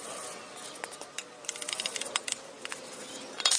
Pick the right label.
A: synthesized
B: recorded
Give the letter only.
B